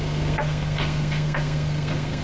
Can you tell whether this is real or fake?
fake